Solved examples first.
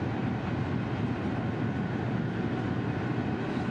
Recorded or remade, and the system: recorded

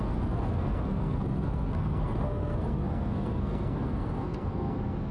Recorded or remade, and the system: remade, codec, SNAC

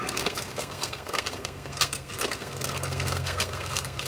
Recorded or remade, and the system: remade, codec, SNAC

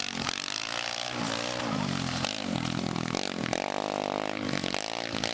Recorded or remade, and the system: recorded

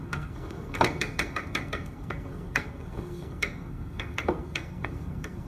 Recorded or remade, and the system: remade, codec, SNAC